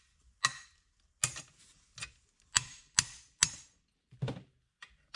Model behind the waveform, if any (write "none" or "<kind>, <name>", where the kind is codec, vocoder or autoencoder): none